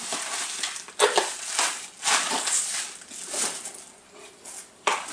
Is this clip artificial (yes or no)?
no